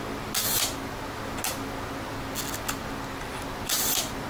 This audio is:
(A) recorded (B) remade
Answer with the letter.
A